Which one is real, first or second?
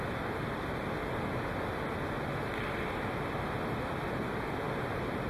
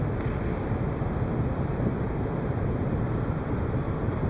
first